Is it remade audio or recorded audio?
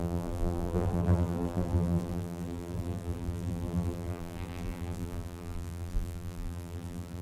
remade